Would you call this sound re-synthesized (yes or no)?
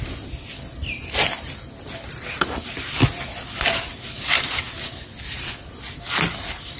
no